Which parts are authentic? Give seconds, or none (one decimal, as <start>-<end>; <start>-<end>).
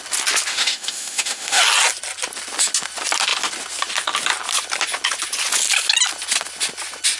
0.0-0.5; 1.6-7.2